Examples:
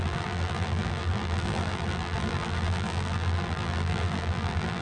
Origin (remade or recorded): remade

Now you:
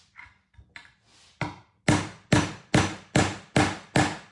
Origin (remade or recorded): recorded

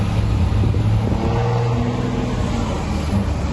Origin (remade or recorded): recorded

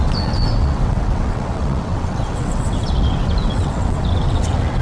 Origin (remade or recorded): remade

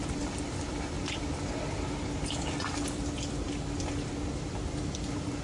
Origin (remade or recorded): recorded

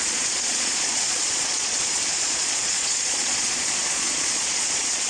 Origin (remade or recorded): remade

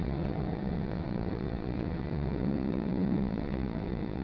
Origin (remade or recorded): remade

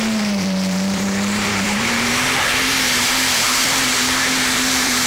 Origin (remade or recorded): remade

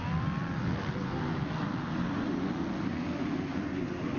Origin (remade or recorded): recorded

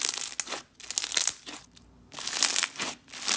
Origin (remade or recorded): recorded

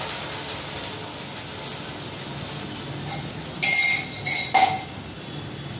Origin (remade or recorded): recorded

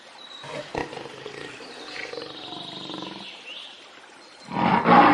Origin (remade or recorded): recorded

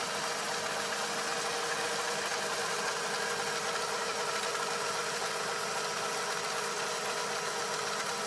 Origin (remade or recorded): recorded